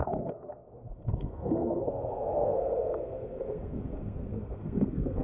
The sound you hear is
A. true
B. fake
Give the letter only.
B